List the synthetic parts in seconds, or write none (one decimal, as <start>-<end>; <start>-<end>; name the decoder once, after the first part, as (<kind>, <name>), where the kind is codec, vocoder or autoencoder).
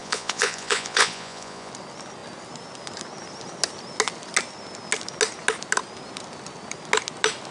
0.0-1.7 (vocoder, Vocos)